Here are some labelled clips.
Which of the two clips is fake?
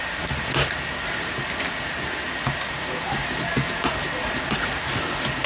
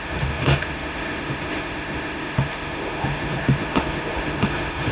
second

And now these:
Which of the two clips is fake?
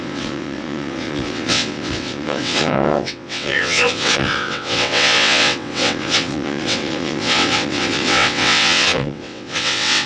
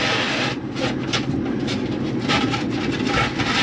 first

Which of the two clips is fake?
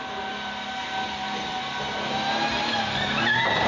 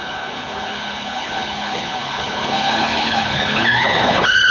second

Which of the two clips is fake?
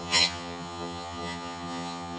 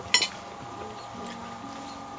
first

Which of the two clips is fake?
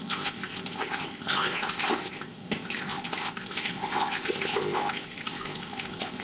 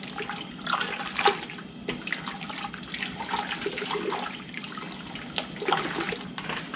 first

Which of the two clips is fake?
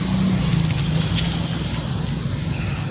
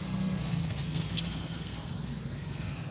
second